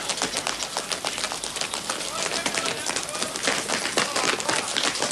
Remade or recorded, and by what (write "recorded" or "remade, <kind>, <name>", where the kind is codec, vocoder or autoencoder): recorded